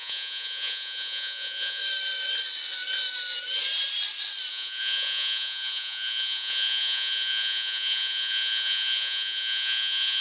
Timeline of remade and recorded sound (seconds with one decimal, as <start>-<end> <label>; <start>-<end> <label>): 0.0-1.8 remade; 1.8-4.5 recorded; 4.5-10.2 remade